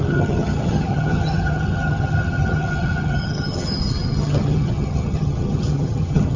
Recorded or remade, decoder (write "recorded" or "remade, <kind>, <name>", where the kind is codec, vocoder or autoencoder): remade, vocoder, HiFi-GAN